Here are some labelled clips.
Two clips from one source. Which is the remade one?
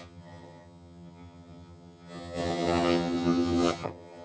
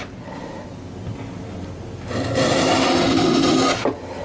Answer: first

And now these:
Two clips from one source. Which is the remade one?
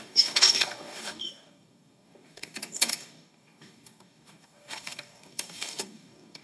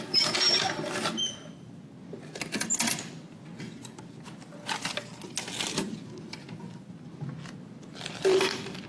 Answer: first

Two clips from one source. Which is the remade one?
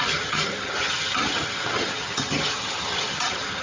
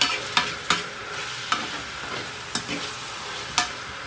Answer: first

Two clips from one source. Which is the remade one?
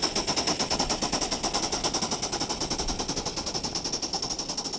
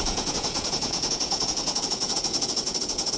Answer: second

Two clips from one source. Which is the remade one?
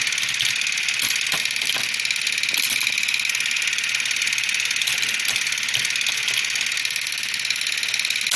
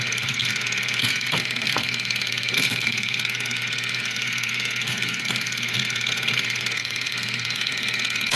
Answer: second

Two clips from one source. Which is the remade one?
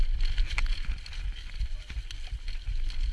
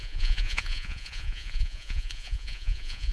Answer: second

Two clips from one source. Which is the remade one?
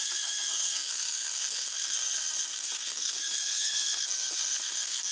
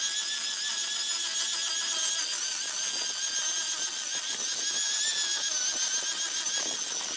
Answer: first